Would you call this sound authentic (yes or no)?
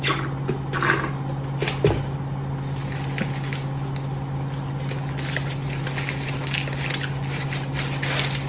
yes